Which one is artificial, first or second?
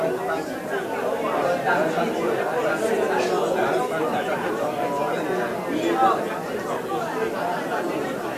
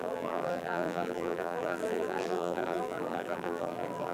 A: second